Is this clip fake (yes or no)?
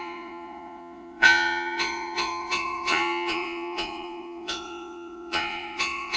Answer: yes